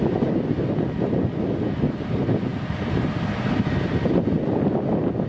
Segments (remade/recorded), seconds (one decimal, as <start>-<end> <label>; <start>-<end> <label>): 0.0-5.3 recorded